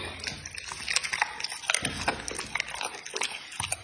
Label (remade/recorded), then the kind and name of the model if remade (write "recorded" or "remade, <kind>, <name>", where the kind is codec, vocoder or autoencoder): recorded